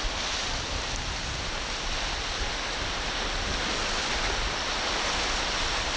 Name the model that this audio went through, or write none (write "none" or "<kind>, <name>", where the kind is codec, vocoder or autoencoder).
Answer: none